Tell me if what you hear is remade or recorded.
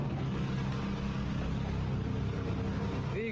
recorded